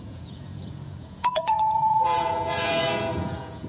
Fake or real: fake